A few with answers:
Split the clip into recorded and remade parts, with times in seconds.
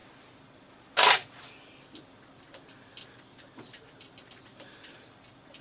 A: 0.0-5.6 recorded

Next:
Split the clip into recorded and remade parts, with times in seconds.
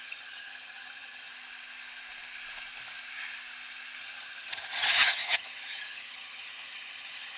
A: 0.0-1.3 remade; 1.3-4.0 recorded; 4.0-7.4 remade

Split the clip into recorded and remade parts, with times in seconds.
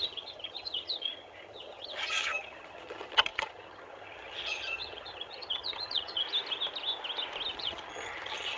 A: 0.0-6.2 remade; 6.2-7.5 recorded; 7.5-8.6 remade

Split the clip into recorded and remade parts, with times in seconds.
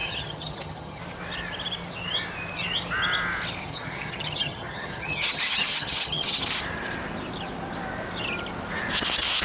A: 0.0-1.0 remade; 1.0-3.6 recorded; 3.6-6.4 remade; 6.4-9.4 recorded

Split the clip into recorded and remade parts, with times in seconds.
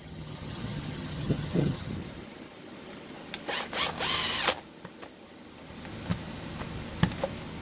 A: 0.0-1.9 remade; 1.9-7.6 recorded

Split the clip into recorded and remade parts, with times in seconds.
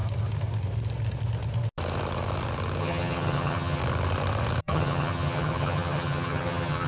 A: 0.0-2.8 recorded; 2.8-3.8 remade; 3.8-4.6 recorded; 4.6-6.9 remade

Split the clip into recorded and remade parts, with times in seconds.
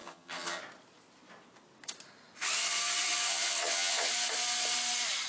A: 0.0-0.6 remade; 0.6-3.3 recorded; 3.3-4.1 remade; 4.1-5.3 recorded